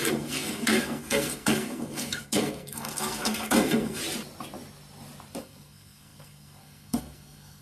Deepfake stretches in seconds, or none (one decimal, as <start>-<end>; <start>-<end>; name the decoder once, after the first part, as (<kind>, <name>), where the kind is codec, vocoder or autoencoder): 0.0-4.0 (codec, SNAC); 5.4-7.6